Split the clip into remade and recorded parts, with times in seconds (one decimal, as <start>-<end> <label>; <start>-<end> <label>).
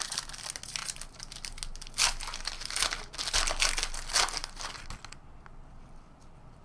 0.0-6.6 recorded